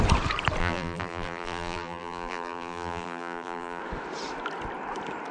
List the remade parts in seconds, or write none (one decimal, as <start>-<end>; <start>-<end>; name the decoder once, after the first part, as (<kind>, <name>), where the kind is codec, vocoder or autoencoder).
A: 0.6-3.8 (vocoder, BigVGAN v2)